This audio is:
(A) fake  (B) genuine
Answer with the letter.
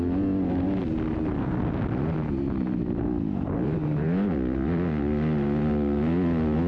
B